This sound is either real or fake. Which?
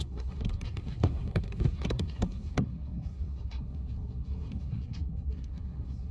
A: fake